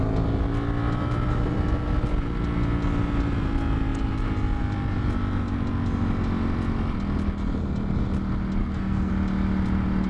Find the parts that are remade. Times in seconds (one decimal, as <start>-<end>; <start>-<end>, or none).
8.6-9.1